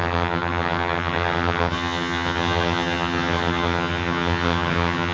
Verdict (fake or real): fake